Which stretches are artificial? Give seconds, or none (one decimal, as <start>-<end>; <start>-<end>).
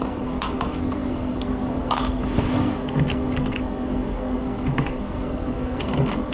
0.0-6.3